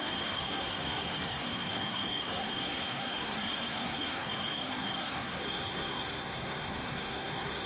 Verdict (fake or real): fake